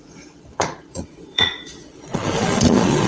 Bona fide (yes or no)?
no